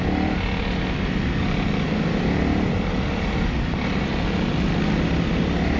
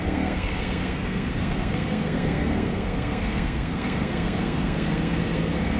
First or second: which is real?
first